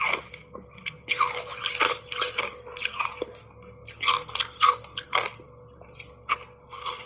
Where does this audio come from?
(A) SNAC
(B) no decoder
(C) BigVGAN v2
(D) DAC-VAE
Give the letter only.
B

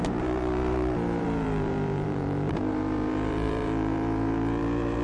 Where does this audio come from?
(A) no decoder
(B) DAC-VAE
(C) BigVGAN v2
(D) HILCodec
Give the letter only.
C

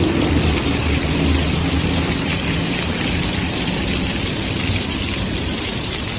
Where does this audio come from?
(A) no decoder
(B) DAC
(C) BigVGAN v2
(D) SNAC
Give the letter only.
C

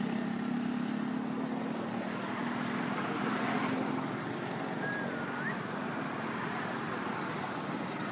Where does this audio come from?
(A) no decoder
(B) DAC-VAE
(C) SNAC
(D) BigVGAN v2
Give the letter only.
D